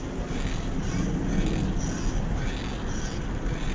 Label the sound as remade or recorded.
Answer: recorded